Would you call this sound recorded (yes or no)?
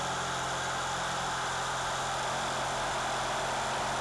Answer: yes